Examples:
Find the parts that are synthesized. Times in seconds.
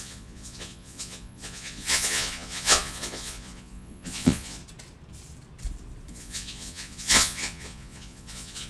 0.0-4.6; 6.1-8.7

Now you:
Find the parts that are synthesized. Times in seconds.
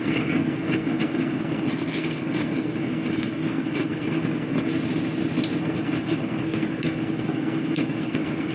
0.0-4.7; 5.6-8.5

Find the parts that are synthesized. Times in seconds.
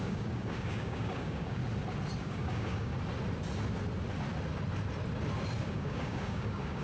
0.0-1.6; 2.2-2.9; 5.6-6.8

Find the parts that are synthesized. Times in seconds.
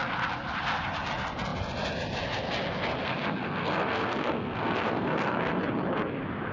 3.0-5.6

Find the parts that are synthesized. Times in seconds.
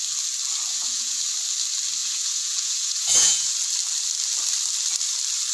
0.7-1.2; 2.0-3.5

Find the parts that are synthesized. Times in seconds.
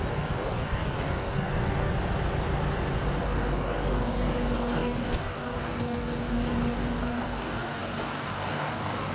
0.0-1.9; 3.2-9.1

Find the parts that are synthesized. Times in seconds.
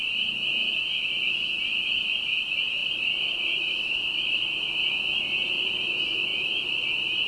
2.8-4.6; 5.1-5.7; 6.3-6.8